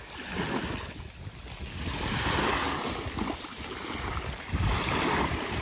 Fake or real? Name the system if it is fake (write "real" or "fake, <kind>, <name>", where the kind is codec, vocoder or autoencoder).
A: real